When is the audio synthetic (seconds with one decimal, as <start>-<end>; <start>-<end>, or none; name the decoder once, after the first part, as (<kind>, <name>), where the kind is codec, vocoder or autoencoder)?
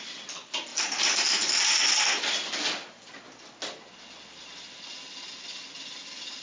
none